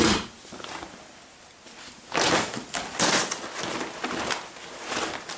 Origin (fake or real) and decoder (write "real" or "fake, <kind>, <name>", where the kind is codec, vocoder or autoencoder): real